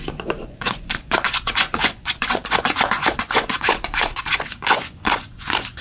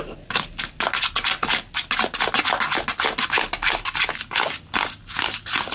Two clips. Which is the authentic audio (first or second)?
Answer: second